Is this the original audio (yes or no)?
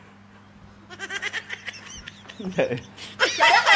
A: yes